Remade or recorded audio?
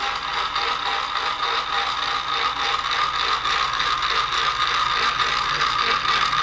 recorded